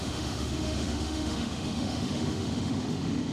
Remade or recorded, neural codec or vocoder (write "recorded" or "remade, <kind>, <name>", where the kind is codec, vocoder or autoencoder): remade, autoencoder, DAC-VAE